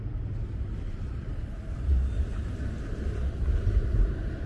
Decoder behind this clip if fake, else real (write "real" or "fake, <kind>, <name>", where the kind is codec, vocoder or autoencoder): real